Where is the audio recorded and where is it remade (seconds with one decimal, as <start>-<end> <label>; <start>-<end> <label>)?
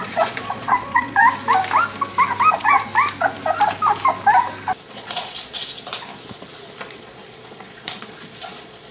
0.0-1.2 remade; 1.2-2.5 recorded; 2.5-2.9 remade; 2.9-4.9 recorded; 4.9-5.6 remade; 5.6-6.9 recorded; 6.9-8.9 remade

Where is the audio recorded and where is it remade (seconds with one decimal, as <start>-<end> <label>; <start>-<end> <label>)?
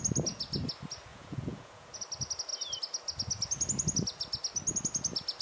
0.0-1.1 recorded; 1.1-2.0 remade; 2.0-5.4 recorded